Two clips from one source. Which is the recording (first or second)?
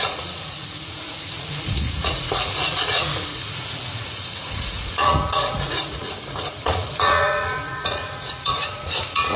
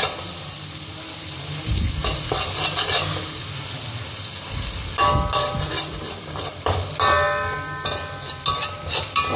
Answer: second